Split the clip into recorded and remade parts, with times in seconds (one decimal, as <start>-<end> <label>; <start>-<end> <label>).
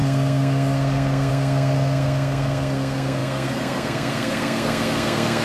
0.0-5.4 remade